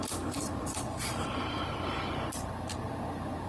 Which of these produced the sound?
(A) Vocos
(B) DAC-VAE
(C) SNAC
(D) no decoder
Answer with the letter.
D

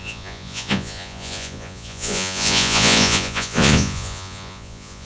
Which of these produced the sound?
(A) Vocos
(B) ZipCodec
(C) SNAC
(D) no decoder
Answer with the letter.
A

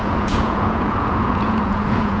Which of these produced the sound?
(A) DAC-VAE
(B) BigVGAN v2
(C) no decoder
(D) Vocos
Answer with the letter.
D